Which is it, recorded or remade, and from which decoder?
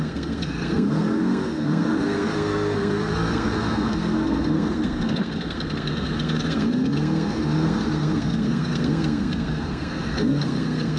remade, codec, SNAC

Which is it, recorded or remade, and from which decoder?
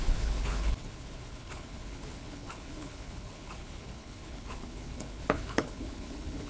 remade, codec, HILCodec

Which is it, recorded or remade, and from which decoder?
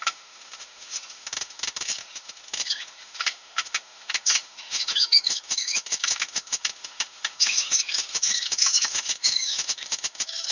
remade, autoencoder, DAC-VAE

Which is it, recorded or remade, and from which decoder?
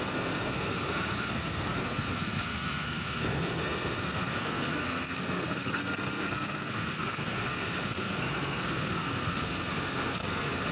remade, codec, SNAC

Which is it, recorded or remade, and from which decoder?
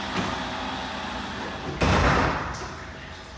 recorded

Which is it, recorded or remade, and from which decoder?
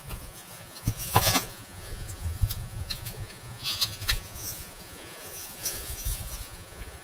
remade, vocoder, Vocos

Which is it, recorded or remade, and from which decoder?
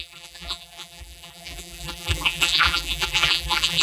remade, vocoder, BigVGAN v2